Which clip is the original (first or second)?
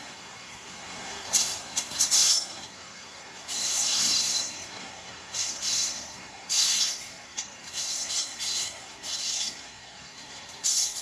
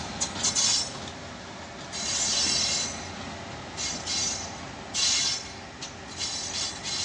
second